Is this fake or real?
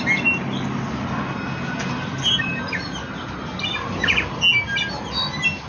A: real